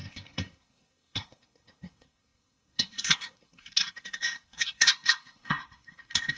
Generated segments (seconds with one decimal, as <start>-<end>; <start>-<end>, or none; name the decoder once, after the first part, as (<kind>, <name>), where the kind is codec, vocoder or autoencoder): 0.0-6.4 (codec, SNAC)